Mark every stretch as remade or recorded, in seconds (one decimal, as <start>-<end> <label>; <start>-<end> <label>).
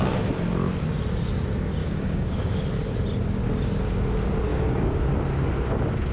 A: 0.0-1.8 recorded; 1.8-2.6 remade; 2.6-4.5 recorded; 4.5-5.1 remade; 5.1-6.1 recorded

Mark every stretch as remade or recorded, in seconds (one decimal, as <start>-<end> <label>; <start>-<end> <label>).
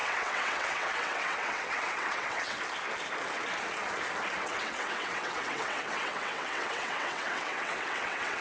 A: 0.0-2.6 remade; 2.6-4.4 recorded; 4.4-8.4 remade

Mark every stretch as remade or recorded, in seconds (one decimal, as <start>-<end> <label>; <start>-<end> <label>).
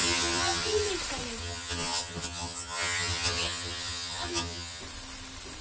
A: 0.0-0.9 remade; 0.9-1.4 recorded; 1.4-4.8 remade; 4.8-5.6 recorded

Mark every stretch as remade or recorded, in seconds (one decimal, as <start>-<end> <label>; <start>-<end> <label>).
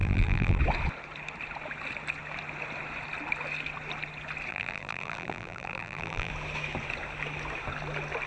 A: 0.0-0.6 remade; 0.6-4.5 recorded; 4.5-6.3 remade; 6.3-8.3 recorded